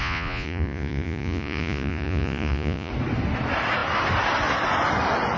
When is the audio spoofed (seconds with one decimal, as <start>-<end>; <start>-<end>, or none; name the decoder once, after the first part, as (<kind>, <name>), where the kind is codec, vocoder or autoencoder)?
0.0-2.9 (vocoder, Vocos)